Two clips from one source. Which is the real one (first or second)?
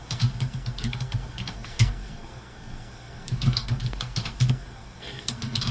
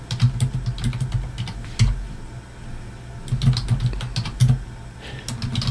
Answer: second